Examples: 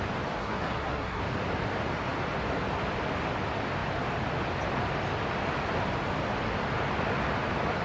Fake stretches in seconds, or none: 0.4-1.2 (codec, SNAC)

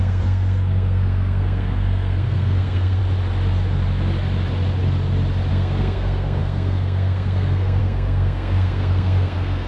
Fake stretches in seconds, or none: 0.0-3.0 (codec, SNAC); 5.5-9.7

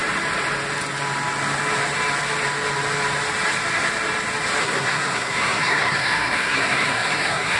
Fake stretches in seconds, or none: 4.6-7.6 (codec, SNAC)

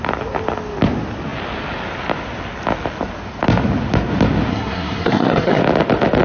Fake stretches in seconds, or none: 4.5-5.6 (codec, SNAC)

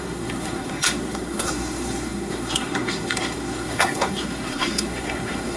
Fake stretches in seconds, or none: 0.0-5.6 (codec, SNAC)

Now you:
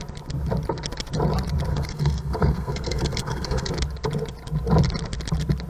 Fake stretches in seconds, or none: 1.7-3.7 (codec, SNAC)

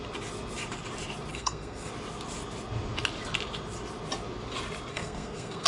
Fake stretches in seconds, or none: 1.3-1.9 (codec, SNAC); 4.9-5.7

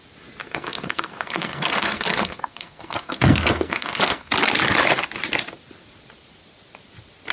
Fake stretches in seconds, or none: 0.4-4.3 (codec, SNAC)